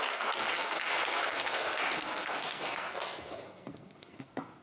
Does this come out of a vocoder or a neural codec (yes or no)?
yes